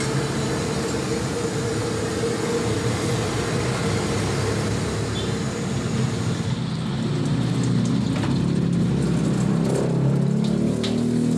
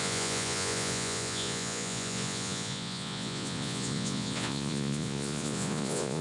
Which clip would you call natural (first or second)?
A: first